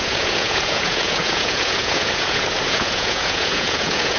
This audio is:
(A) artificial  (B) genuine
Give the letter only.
A